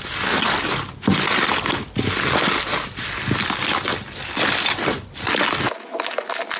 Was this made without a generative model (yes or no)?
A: yes